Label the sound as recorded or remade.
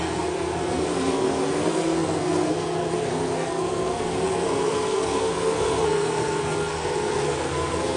remade